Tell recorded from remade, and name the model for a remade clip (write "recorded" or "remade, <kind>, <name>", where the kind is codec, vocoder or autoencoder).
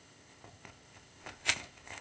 remade, codec, ZipCodec